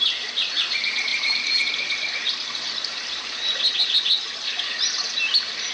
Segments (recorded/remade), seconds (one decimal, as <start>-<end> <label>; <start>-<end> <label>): 0.0-1.1 recorded; 1.1-1.7 remade; 1.7-5.7 recorded